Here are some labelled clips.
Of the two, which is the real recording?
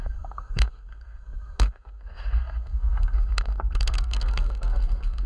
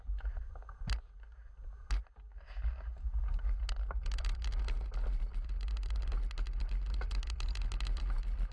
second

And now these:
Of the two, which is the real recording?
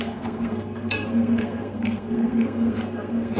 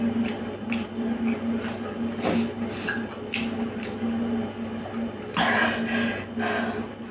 second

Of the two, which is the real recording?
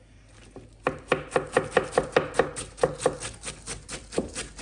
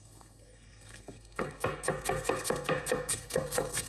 first